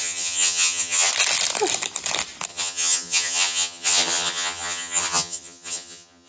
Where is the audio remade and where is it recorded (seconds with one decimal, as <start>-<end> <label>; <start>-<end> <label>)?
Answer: 0.0-1.1 remade; 1.1-2.5 recorded; 2.5-6.3 remade